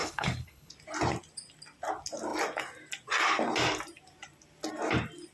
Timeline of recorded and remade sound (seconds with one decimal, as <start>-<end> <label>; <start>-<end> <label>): 0.0-0.7 remade; 0.7-5.3 recorded